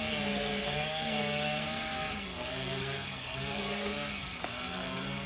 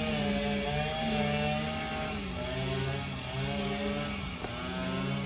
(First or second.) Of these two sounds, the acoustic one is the second